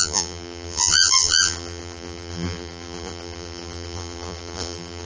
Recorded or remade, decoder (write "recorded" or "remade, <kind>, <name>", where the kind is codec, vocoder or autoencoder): remade, vocoder, BigVGAN v2